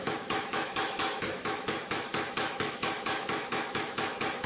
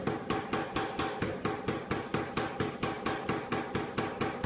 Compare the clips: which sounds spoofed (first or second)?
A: first